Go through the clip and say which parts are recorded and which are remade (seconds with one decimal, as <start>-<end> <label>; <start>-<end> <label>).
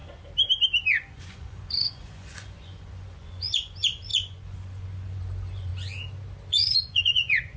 0.0-0.9 recorded; 0.9-5.7 remade; 5.7-6.5 recorded; 6.5-7.6 remade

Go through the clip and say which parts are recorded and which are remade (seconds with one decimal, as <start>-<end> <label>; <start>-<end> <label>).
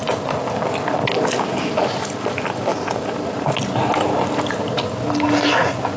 0.0-6.0 recorded